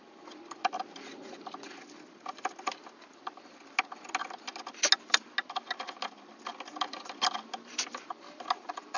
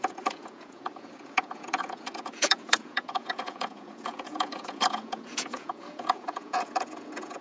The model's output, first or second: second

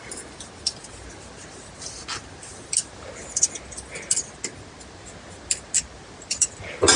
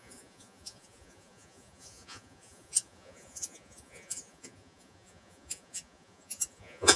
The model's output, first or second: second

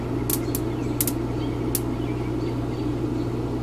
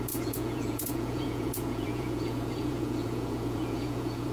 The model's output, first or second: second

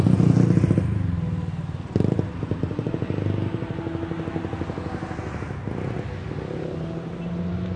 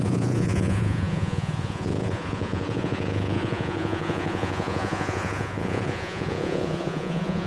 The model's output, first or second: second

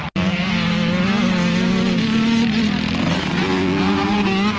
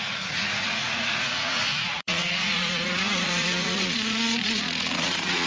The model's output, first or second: second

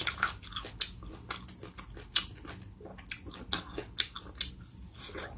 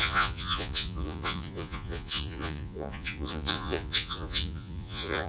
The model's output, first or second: second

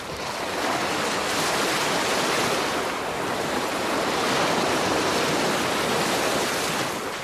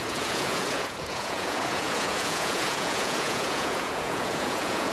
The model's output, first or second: second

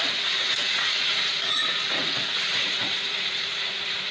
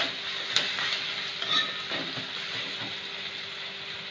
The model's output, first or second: first